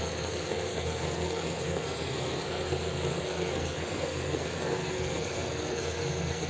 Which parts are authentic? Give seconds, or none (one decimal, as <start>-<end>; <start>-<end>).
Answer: none